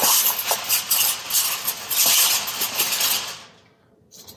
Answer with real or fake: real